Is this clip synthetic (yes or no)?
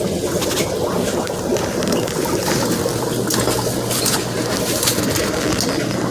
no